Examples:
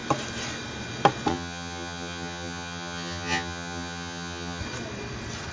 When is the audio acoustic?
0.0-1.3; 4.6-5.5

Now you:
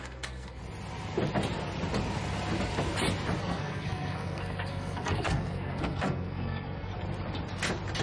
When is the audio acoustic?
0.6-3.4; 6.9-8.0

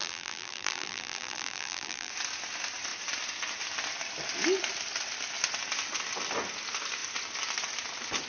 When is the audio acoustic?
2.1-8.3

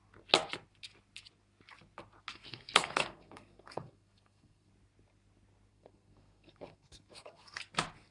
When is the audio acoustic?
0.0-2.3; 4.7-5.7; 7.6-8.1

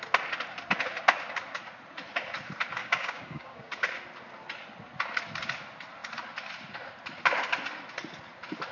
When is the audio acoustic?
0.0-2.8; 3.7-8.7